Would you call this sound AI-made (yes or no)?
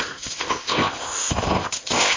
yes